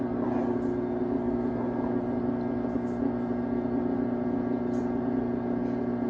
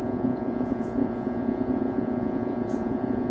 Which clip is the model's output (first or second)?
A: second